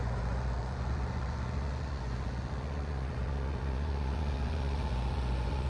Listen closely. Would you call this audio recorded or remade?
remade